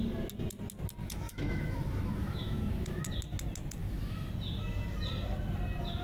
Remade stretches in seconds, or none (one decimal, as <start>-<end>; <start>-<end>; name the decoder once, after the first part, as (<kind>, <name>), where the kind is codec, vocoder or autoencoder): 1.0-3.0 (autoencoder, DAC-VAE); 3.8-4.3